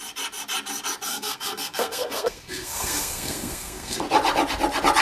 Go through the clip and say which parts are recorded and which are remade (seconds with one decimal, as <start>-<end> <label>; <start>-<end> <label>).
0.0-1.1 recorded; 1.1-4.0 remade; 4.0-5.0 recorded